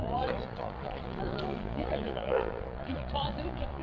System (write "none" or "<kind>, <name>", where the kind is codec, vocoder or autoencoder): vocoder, Vocos